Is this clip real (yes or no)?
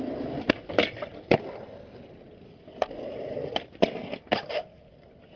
yes